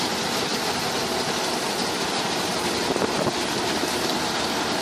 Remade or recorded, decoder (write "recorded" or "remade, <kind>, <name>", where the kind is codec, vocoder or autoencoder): recorded